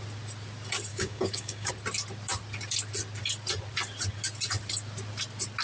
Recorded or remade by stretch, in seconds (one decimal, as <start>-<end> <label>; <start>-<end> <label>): 0.0-0.9 recorded; 0.9-1.7 remade; 1.7-5.6 recorded